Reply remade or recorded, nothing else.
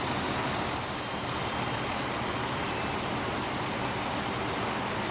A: recorded